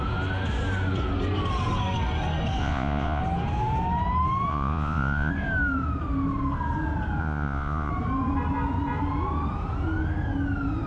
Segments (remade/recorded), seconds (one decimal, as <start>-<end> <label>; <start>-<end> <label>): 0.0-2.6 recorded; 2.6-3.2 remade; 3.2-4.5 recorded; 4.5-5.3 remade; 5.3-7.2 recorded; 7.2-7.9 remade; 7.9-10.9 recorded